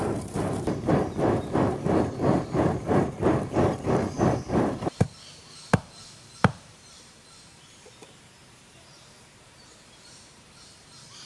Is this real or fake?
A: fake